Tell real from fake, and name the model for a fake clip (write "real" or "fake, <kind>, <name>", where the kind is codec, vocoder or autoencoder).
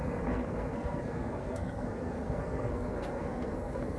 fake, codec, SNAC